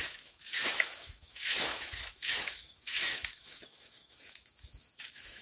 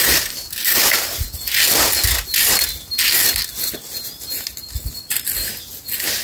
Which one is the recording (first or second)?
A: second